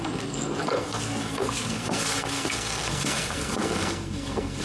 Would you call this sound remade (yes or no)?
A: yes